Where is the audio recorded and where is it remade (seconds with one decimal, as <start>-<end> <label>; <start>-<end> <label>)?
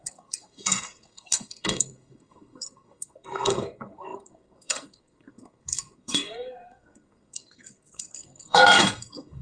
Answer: 0.0-9.4 remade